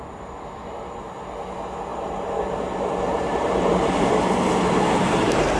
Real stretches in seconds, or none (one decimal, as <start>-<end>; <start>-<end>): 0.0-1.9

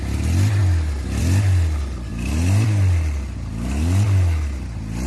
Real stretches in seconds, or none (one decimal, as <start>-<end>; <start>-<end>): 0.0-5.1

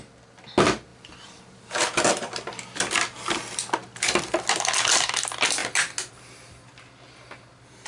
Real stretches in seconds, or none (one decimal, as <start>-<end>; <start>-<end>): 0.0-0.9; 2.9-7.9

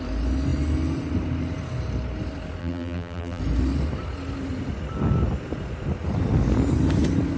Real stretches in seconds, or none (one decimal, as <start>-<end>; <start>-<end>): 0.0-2.6; 3.4-7.4

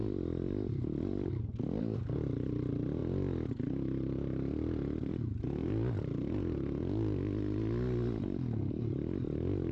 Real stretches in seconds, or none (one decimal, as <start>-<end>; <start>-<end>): 1.3-9.7